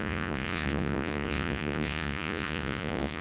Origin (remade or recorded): remade